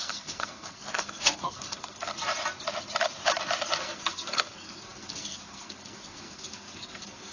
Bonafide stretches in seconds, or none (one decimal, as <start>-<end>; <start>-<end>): 2.1-3.8